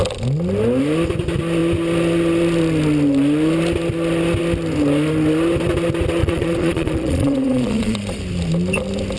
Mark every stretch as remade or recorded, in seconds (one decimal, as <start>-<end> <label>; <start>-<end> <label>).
0.0-6.2 recorded; 6.2-8.2 remade; 8.2-9.2 recorded